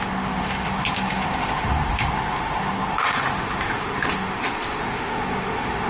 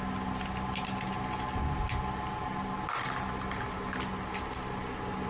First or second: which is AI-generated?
first